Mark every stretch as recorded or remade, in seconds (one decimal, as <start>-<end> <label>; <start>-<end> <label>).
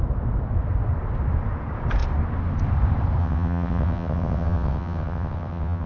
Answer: 0.0-3.2 recorded; 3.2-5.9 remade